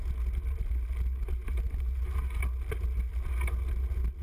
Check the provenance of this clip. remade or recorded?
recorded